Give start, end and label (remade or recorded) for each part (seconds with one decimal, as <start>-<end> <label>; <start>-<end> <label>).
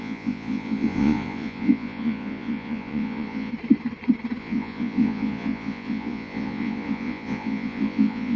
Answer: 0.0-3.5 remade; 3.5-4.4 recorded; 4.4-8.4 remade